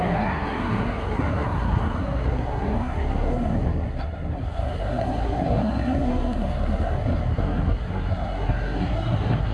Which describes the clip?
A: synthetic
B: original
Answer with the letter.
A